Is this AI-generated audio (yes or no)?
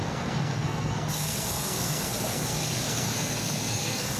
yes